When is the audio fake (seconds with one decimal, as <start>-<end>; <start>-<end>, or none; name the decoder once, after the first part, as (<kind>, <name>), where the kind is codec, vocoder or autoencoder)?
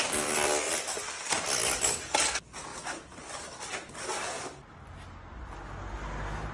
none